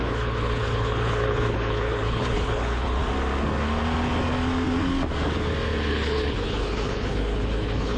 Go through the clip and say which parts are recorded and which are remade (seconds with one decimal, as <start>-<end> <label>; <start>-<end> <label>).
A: 0.0-3.0 remade; 3.0-5.9 recorded; 5.9-8.0 remade